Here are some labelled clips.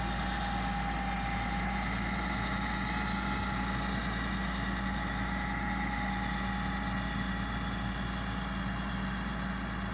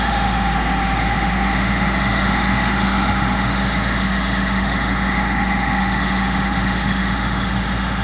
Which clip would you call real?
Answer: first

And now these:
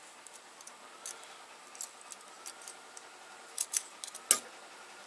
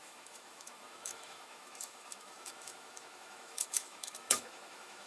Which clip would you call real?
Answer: first